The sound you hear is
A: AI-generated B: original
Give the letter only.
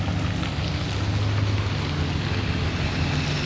B